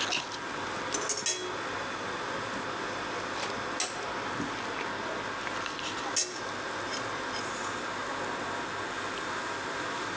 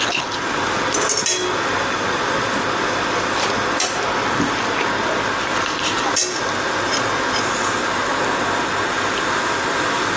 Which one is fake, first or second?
second